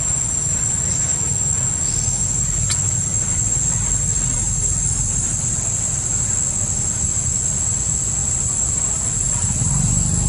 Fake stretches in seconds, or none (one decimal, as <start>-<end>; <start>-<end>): 8.2-8.8